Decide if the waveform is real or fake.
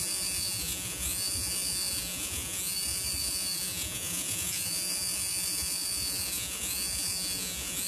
fake